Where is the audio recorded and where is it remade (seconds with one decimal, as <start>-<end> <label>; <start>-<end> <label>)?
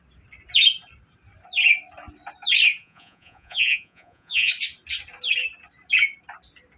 0.0-2.8 recorded; 2.8-4.5 remade; 4.5-6.8 recorded